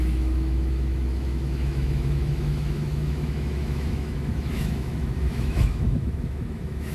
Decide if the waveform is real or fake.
fake